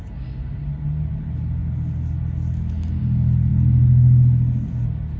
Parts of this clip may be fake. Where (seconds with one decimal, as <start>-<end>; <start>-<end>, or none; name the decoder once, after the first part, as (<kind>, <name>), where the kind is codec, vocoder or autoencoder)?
none